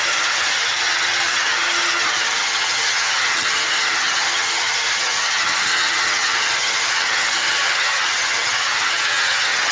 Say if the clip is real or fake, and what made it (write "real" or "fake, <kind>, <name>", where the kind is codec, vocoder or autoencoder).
fake, vocoder, HiFi-GAN